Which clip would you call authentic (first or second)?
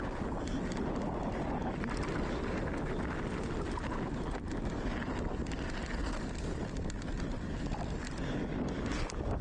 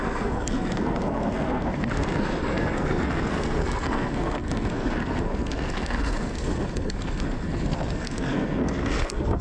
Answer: first